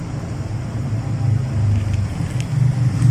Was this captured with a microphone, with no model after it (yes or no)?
yes